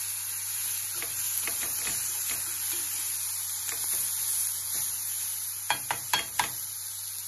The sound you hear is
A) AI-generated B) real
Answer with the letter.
B